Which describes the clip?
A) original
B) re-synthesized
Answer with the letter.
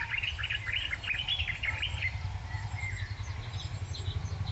A